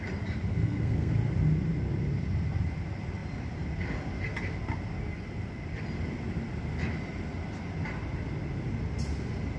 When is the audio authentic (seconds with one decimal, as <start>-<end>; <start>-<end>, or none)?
0.0-0.5; 1.1-9.6